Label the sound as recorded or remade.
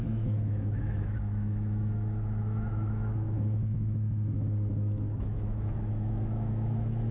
remade